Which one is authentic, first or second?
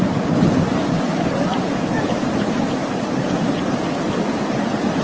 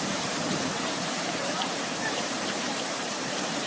first